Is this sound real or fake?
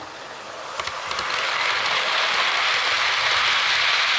real